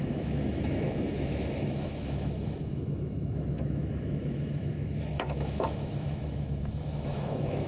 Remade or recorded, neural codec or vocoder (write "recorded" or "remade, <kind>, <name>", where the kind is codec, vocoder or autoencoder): remade, autoencoder, DAC-VAE